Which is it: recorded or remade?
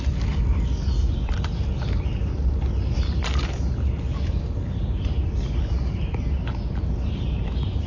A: recorded